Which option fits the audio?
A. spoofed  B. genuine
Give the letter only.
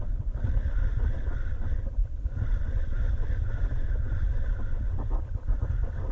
B